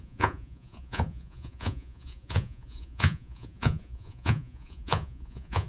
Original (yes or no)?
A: no